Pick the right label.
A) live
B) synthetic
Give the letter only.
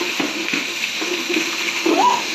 B